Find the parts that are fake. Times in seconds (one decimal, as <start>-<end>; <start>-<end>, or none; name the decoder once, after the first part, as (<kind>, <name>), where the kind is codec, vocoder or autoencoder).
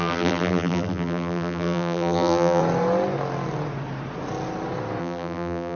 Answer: 0.0-2.6 (vocoder, BigVGAN v2); 5.0-5.8